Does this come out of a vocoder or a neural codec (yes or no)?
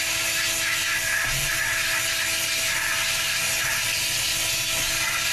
no